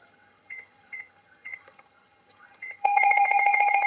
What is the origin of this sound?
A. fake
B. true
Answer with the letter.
A